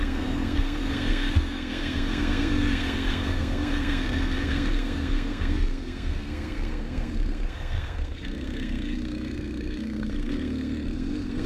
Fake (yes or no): yes